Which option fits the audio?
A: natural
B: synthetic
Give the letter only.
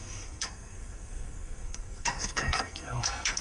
B